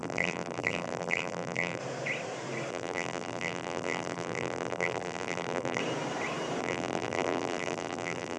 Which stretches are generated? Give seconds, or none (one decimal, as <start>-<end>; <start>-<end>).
0.0-1.8; 2.7-5.8; 6.6-8.4